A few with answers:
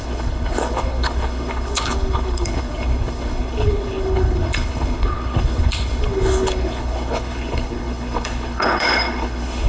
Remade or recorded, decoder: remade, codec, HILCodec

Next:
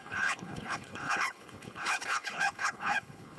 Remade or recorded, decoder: remade, codec, HILCodec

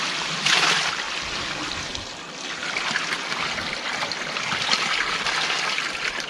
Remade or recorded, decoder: recorded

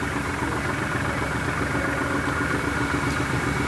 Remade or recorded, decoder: recorded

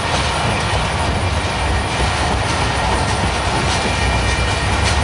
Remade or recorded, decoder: recorded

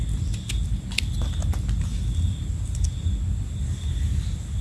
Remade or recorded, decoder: recorded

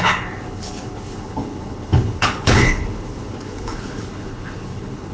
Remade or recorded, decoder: remade, codec, HILCodec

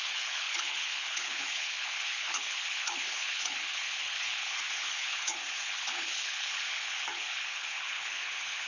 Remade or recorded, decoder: remade, codec, HILCodec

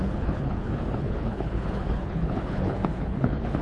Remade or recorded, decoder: remade, codec, HILCodec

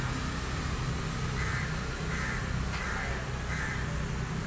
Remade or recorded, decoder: recorded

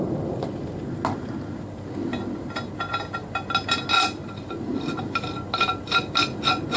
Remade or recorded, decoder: recorded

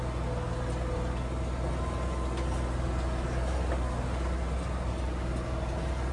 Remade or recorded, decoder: recorded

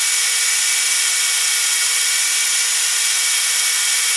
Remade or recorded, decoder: recorded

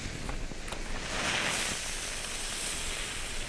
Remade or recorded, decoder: recorded